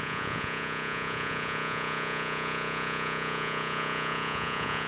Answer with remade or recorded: remade